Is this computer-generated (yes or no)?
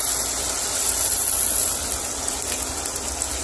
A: no